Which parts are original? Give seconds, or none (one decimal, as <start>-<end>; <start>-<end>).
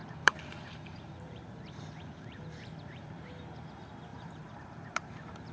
3.3-4.1